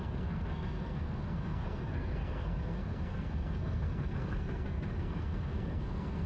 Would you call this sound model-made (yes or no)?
yes